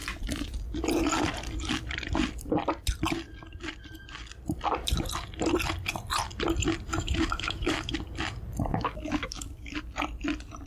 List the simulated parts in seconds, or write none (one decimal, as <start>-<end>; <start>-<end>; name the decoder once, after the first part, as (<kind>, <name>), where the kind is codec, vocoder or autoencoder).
6.9-7.9 (autoencoder, DAC-VAE); 8.7-9.8